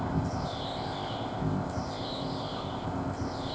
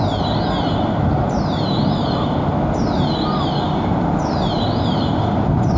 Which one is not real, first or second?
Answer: first